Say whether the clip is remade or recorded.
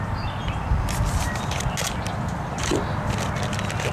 recorded